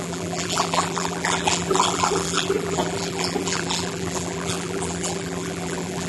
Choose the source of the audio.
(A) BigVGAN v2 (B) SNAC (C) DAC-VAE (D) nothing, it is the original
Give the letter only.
A